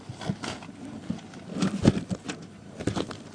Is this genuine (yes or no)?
yes